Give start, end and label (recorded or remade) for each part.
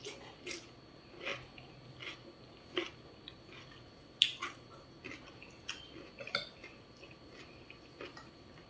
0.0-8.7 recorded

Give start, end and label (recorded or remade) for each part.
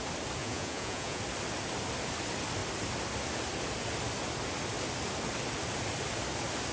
0.0-0.4 recorded; 0.4-1.2 remade; 1.2-6.7 recorded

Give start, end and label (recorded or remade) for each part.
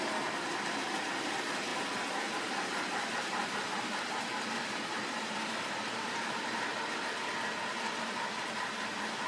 0.0-6.7 remade; 6.7-8.0 recorded; 8.0-9.3 remade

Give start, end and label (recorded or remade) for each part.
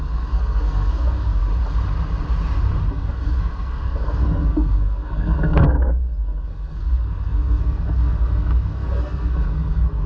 0.0-1.4 remade; 1.4-2.9 recorded; 2.9-10.1 remade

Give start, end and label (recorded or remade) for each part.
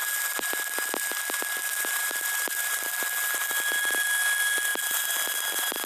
0.0-1.7 recorded; 1.7-2.9 remade; 2.9-4.7 recorded; 4.7-5.9 remade